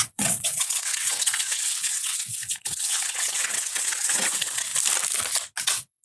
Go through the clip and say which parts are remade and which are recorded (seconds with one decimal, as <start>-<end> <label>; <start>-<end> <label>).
0.0-4.7 remade; 4.7-5.6 recorded; 5.6-6.0 remade